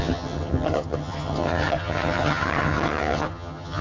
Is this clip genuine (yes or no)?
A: no